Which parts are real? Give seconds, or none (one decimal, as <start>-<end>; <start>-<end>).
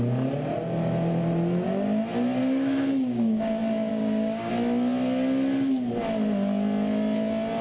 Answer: 0.0-2.4; 3.4-3.9; 4.5-7.6